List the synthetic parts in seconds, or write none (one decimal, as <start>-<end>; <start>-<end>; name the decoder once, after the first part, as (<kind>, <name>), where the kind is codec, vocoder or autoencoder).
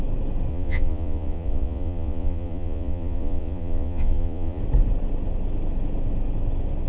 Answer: 0.5-4.6 (vocoder, Vocos)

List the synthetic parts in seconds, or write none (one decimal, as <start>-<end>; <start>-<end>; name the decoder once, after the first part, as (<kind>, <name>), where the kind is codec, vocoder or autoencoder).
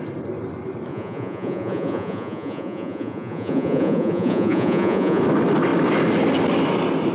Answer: 0.9-5.2 (vocoder, Vocos)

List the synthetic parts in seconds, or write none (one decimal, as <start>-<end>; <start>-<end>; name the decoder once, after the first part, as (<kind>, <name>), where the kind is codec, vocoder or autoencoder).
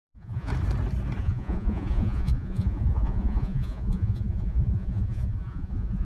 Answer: 0.0-0.5 (vocoder, Vocos); 1.2-6.0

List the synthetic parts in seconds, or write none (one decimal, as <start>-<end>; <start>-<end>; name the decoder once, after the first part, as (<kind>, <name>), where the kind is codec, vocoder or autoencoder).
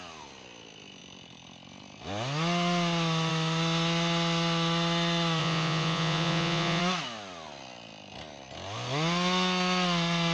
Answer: 5.4-6.8 (vocoder, Vocos)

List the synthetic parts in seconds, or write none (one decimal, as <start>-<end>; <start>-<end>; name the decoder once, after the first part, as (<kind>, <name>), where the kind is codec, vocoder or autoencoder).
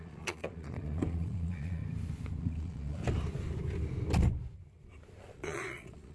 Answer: 0.0-1.8 (vocoder, Vocos); 2.4-3.0; 5.2-6.1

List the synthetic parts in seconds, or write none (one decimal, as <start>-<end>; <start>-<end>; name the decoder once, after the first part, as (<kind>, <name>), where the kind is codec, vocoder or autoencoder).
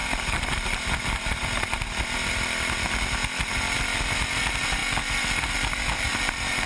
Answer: none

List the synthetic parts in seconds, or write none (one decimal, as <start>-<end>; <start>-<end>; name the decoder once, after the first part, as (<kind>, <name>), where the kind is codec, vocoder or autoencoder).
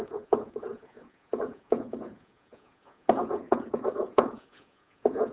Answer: 0.0-5.3 (vocoder, Vocos)